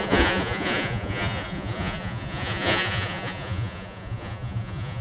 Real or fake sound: fake